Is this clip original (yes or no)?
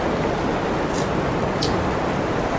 yes